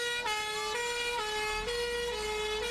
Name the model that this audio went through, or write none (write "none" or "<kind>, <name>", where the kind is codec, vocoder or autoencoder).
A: none